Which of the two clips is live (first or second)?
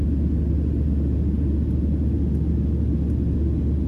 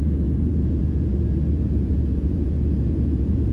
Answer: first